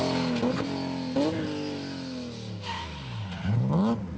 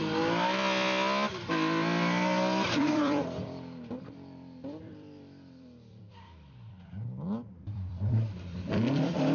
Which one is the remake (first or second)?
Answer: second